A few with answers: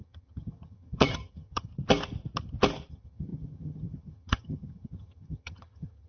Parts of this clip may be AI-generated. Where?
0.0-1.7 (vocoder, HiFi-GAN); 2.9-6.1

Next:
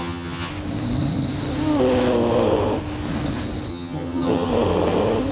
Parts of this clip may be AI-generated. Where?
0.0-0.5 (vocoder, HiFi-GAN); 3.7-4.5

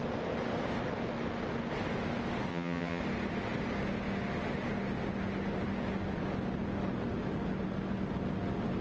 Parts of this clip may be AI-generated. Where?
2.5-3.0 (vocoder, HiFi-GAN)

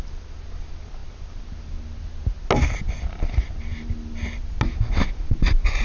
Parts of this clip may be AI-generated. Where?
none

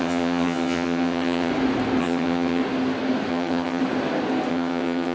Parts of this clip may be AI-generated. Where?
0.0-1.5 (vocoder, HiFi-GAN); 2.0-2.6; 3.3-3.8; 4.5-5.1

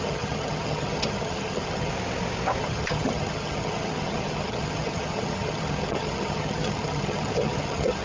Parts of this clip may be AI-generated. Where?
0.0-1.9 (vocoder, HiFi-GAN); 2.6-8.0

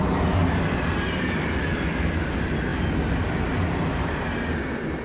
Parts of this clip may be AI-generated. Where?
none

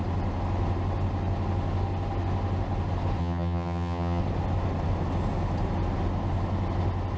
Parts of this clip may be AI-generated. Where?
3.2-4.2 (vocoder, HiFi-GAN)